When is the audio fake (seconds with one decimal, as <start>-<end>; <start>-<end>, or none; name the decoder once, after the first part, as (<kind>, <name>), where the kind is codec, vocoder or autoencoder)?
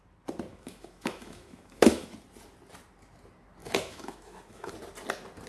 0.5-2.1 (autoencoder, DAC-VAE); 3.6-4.7